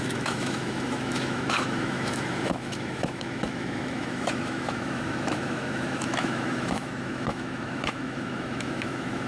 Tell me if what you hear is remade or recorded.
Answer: remade